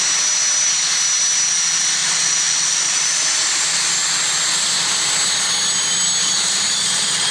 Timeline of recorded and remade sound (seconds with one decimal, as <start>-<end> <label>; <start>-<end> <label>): 0.0-2.0 recorded; 2.0-3.9 remade; 3.9-6.2 recorded; 6.2-7.3 remade